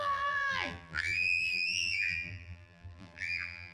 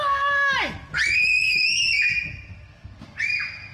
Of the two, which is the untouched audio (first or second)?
second